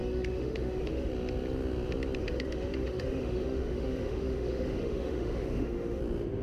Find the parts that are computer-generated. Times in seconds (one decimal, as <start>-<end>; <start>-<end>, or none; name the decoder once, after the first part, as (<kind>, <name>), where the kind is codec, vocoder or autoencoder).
0.0-1.1 (autoencoder, DAC-VAE); 2.2-6.0